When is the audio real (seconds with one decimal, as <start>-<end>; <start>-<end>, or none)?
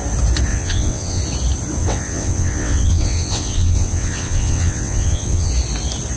0.0-0.5; 1.2-1.8; 5.5-6.2